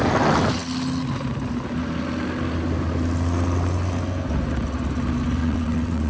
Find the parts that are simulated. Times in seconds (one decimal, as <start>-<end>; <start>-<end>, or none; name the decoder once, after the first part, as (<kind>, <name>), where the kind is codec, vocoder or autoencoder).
5.4-6.1 (vocoder, WaveNeXt)

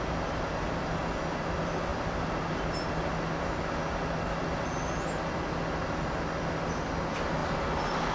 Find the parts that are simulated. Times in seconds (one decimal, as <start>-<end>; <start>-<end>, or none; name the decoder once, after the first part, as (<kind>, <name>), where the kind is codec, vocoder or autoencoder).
none

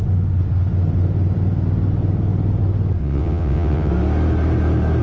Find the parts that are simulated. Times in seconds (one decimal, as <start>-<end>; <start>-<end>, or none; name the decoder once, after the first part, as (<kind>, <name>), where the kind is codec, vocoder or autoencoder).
3.0-3.9 (vocoder, WaveNeXt)

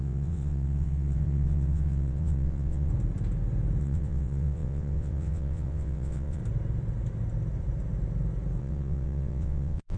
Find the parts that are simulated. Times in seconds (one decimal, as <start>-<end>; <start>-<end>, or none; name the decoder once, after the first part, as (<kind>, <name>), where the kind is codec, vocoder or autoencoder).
0.0-2.9 (vocoder, WaveNeXt); 3.8-6.4; 8.6-10.0

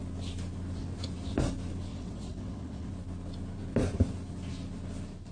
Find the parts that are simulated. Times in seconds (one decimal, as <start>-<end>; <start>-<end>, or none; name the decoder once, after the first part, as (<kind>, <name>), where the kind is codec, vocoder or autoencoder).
1.9-2.9 (vocoder, WaveNeXt)